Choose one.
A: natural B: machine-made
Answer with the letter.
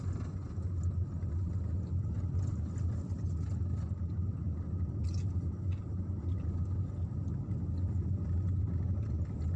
A